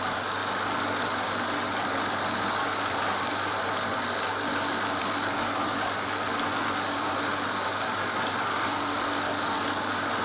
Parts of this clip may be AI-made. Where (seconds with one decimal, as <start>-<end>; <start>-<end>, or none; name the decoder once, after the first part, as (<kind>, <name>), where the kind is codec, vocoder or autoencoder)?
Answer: none